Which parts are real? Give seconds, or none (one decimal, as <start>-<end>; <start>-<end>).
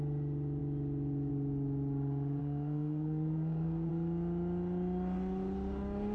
0.0-2.4; 3.9-6.1